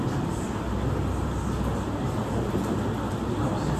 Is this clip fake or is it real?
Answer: real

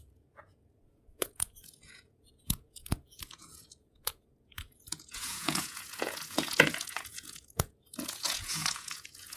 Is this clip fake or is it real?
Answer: fake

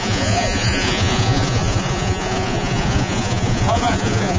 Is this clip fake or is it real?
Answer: fake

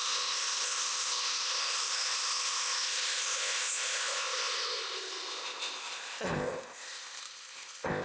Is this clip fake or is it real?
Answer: fake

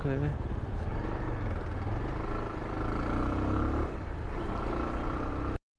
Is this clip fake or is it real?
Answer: real